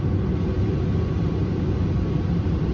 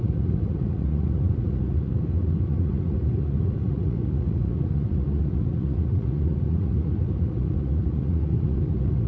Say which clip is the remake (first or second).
second